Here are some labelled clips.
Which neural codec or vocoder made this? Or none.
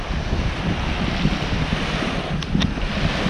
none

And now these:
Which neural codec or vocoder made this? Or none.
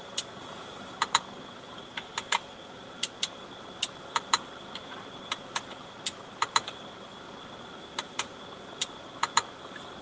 vocoder, BigVGAN v2